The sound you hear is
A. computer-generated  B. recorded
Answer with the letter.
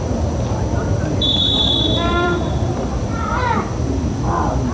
A